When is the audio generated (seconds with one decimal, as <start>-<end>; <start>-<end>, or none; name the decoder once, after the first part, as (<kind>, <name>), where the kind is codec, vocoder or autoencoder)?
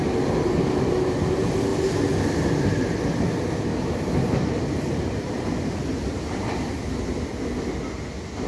3.7-5.3 (vocoder, BigVGAN v2)